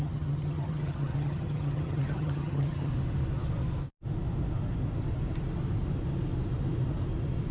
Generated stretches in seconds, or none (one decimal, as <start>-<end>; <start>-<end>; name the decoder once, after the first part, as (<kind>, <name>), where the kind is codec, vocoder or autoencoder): 0.0-2.9 (vocoder, HiFi-GAN)